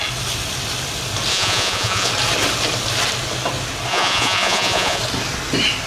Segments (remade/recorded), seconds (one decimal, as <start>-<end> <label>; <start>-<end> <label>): 0.0-1.3 recorded; 1.3-2.1 remade; 2.1-3.9 recorded; 3.9-5.0 remade; 5.0-5.9 recorded